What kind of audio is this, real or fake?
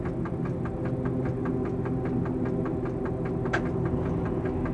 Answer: real